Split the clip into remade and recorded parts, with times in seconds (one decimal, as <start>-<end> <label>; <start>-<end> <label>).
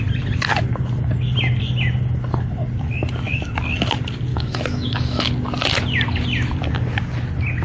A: 0.0-4.3 recorded; 4.3-5.3 remade; 5.3-7.6 recorded